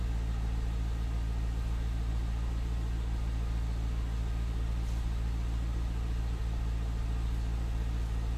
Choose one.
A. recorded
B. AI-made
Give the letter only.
A